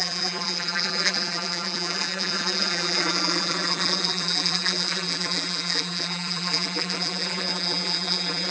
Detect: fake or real fake